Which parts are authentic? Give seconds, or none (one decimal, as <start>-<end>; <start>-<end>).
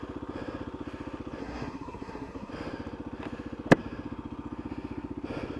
0.0-1.4; 2.5-5.6